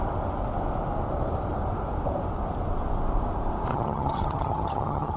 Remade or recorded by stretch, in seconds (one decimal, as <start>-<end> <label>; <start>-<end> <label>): 0.0-3.7 recorded; 3.7-5.2 remade